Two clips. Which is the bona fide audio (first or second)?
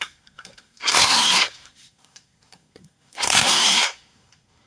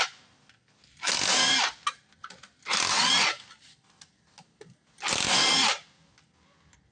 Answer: second